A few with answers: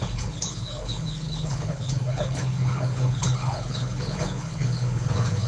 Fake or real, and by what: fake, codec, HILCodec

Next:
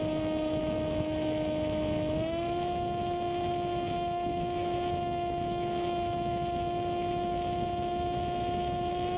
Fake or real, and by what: fake, autoencoder, DAC-VAE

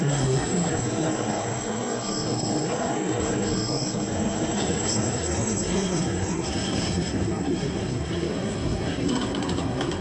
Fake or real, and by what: fake, codec, SNAC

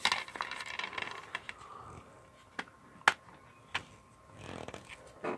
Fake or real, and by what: real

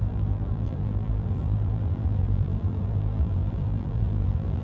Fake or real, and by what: fake, vocoder, BigVGAN v2